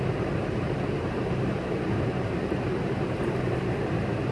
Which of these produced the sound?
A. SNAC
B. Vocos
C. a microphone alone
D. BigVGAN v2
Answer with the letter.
D